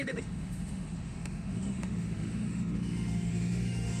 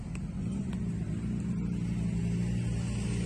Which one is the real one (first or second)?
second